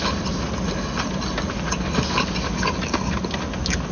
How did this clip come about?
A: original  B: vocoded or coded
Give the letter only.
A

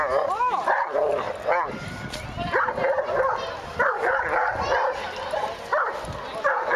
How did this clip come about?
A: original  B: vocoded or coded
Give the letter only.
A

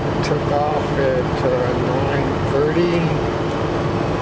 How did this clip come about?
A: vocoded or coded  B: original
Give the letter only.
B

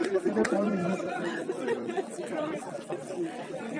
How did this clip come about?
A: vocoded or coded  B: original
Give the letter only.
A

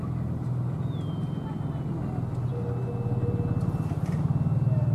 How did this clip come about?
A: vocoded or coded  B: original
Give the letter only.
B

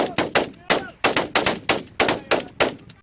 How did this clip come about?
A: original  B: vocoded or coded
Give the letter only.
A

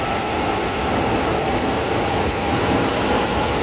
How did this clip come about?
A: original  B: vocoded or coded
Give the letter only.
A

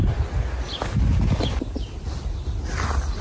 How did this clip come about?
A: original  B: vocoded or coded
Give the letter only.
A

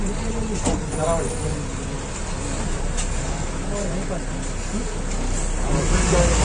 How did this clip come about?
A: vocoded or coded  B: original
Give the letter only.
B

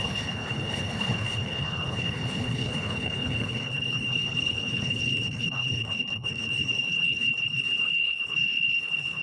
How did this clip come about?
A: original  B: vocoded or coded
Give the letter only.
B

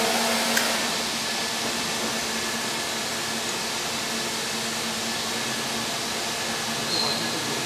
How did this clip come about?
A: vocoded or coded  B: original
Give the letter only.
B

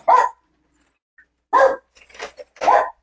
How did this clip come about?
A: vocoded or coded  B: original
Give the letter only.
B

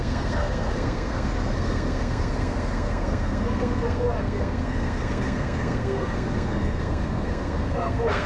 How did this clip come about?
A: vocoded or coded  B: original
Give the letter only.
A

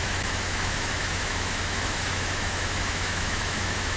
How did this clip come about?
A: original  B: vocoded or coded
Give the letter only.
B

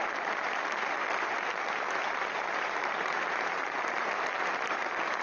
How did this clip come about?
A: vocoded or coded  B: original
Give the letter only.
A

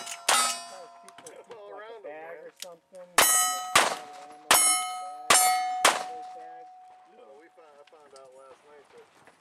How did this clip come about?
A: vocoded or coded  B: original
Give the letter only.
B